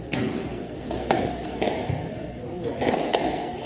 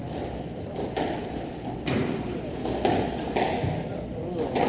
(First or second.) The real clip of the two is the second